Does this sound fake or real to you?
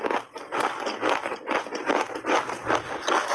real